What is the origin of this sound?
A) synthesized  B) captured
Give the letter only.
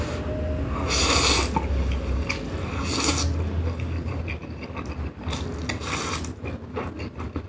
B